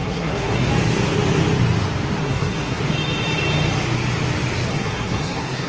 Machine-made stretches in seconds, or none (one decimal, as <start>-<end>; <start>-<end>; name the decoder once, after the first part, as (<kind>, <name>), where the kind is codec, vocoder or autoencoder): 0.0-0.7 (codec, SNAC); 2.2-2.8; 4.7-5.7